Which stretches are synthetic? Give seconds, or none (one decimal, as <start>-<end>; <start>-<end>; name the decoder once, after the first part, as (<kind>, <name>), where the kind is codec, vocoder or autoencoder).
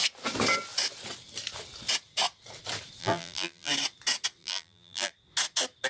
3.0-3.7 (vocoder, BigVGAN v2); 4.4-5.1